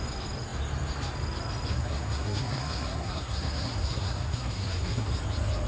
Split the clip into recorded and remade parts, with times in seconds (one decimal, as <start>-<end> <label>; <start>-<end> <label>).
0.0-1.7 recorded; 1.7-5.1 remade; 5.1-5.7 recorded